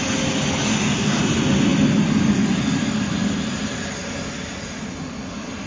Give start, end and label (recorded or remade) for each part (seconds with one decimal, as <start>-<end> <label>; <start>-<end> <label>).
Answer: 0.0-0.7 recorded; 0.7-1.2 remade; 1.2-5.7 recorded